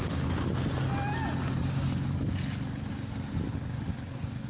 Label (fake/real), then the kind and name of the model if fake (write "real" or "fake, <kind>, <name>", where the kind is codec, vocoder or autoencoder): real